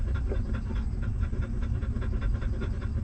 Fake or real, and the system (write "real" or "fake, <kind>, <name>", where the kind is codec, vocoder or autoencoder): real